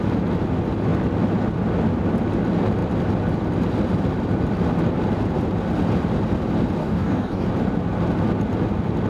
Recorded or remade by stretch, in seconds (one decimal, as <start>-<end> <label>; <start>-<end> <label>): 0.0-6.8 recorded; 6.8-7.5 remade; 7.5-9.1 recorded